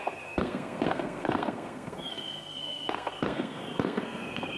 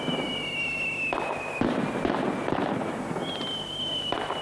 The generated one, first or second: first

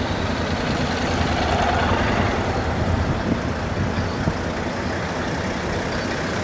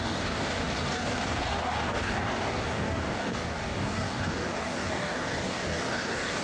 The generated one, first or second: second